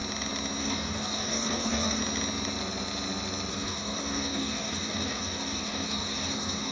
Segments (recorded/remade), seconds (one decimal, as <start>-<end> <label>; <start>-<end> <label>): 0.0-0.6 recorded; 0.6-2.0 remade; 2.0-3.5 recorded; 3.5-6.7 remade